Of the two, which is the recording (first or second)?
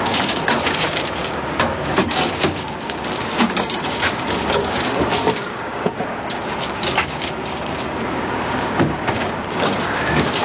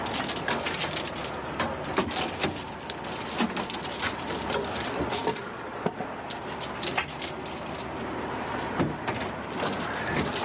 second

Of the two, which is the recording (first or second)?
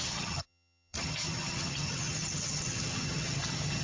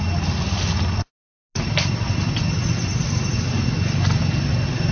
second